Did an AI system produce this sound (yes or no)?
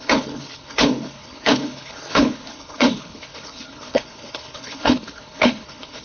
yes